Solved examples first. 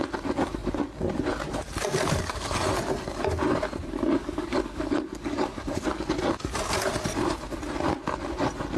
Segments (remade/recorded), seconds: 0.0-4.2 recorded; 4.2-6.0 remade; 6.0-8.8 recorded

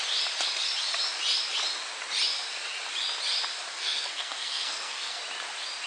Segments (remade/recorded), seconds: 0.0-3.7 recorded; 3.7-5.2 remade; 5.2-5.9 recorded

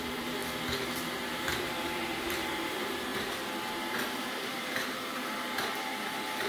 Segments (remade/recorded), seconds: 0.0-0.4 remade; 0.4-1.3 recorded; 1.3-3.1 remade; 3.1-3.7 recorded; 3.7-6.5 remade